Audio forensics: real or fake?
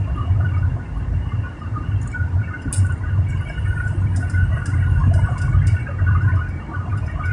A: real